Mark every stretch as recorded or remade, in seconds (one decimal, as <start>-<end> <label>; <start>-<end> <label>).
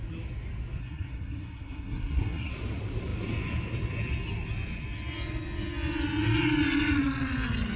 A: 0.0-0.8 recorded; 0.8-2.5 remade; 2.5-7.8 recorded